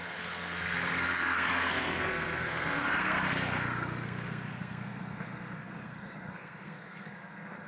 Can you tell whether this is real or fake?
fake